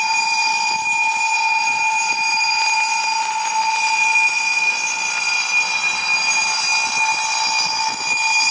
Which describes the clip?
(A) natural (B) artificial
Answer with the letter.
A